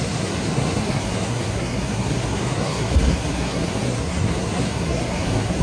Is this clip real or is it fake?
fake